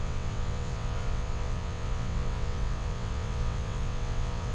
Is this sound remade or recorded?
remade